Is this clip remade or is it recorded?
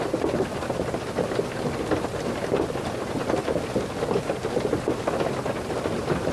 remade